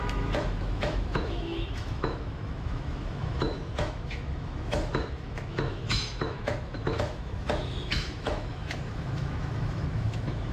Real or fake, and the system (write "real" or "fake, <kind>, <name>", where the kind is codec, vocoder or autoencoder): fake, autoencoder, DAC-VAE